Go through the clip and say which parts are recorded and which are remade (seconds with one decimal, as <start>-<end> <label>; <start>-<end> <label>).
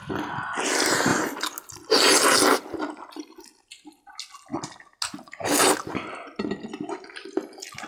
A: 0.0-7.9 recorded